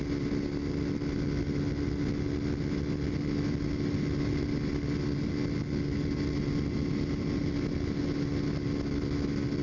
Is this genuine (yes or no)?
yes